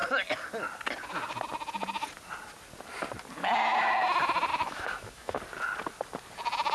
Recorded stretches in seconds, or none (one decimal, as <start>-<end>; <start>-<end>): 0.0-4.5; 5.4-6.7